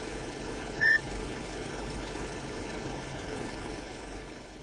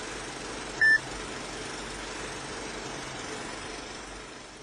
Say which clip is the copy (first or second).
first